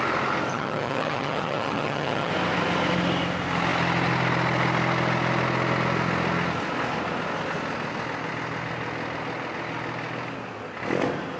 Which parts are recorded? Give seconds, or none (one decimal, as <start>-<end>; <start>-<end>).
0.0-0.5; 2.3-11.4